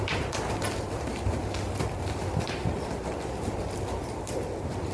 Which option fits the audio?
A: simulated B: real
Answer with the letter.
B